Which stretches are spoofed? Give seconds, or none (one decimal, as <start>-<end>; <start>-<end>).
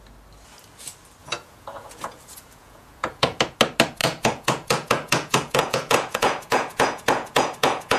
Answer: 1.2-3.4; 4.0-8.0